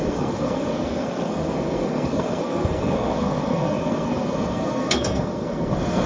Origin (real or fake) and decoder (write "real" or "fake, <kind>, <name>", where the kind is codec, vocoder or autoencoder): fake, codec, SNAC